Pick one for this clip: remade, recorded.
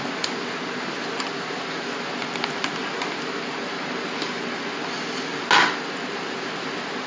recorded